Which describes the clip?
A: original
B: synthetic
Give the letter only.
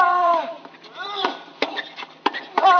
B